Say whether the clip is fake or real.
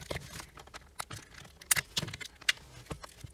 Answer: real